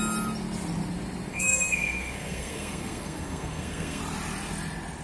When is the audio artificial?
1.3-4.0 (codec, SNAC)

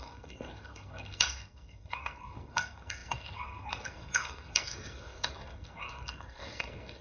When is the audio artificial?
0.0-7.0 (codec, SNAC)

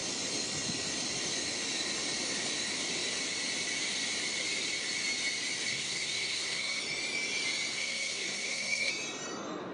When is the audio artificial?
5.7-6.8 (codec, SNAC); 7.7-8.9

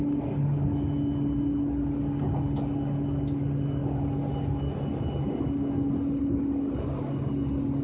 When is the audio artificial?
none

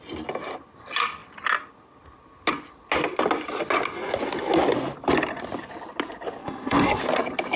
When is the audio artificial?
6.4-7.0 (codec, SNAC)

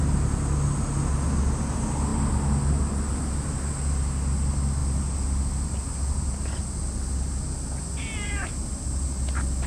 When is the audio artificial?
none

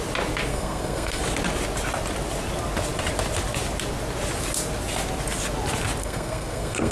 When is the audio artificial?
0.5-1.2 (codec, SNAC); 6.0-6.9

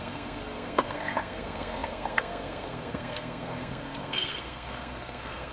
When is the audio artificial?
0.0-5.5 (codec, SNAC)